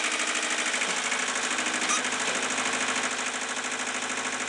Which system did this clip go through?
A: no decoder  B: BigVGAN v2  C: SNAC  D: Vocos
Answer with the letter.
A